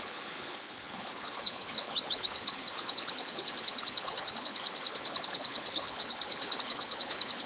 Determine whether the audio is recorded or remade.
remade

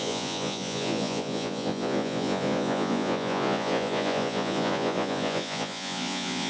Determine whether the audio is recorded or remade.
remade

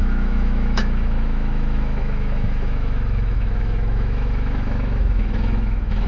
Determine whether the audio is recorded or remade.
remade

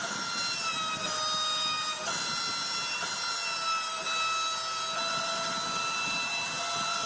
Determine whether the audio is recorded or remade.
recorded